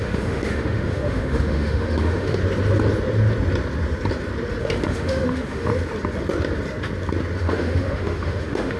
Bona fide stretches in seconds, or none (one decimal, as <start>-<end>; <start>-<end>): 2.4-4.6; 5.7-7.4